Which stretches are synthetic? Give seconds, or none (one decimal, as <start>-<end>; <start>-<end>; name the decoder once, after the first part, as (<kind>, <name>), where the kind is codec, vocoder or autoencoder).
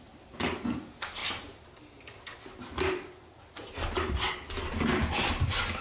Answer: none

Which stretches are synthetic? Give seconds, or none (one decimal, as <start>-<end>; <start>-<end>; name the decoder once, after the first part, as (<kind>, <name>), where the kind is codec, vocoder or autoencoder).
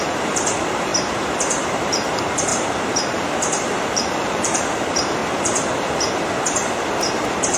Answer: 0.0-5.2 (vocoder, BigVGAN v2); 7.1-7.6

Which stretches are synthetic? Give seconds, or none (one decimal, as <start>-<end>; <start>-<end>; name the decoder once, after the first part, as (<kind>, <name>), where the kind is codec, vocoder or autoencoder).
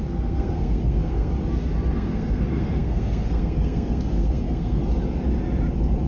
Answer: 0.0-1.3 (codec, SNAC); 1.9-4.8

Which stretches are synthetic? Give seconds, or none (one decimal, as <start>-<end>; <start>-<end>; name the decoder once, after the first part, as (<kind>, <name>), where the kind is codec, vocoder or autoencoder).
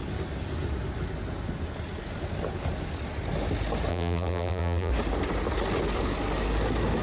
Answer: 3.9-4.9 (vocoder, BigVGAN v2)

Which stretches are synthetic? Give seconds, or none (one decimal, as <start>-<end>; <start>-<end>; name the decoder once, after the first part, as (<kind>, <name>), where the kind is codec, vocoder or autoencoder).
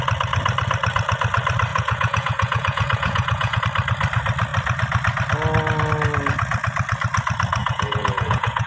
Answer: 1.7-3.6 (vocoder, Vocos); 7.6-8.7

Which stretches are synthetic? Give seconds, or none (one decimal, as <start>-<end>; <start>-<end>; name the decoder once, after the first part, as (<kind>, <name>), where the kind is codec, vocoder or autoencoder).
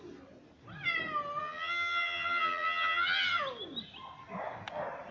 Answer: 1.4-3.4 (vocoder, HiFi-GAN)